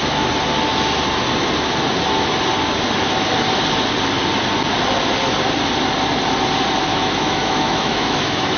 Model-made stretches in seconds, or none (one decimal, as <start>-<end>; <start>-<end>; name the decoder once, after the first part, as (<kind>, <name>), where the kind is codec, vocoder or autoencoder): 6.9-8.6 (autoencoder, DAC-VAE)